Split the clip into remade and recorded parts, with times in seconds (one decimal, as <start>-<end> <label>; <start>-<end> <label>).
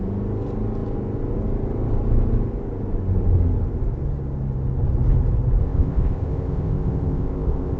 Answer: 0.0-5.6 recorded; 5.6-7.8 remade